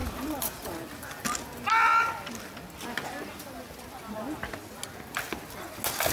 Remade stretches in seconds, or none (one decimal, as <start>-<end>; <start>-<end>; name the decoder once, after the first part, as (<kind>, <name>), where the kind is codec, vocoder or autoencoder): 0.0-0.7 (vocoder, BigVGAN v2)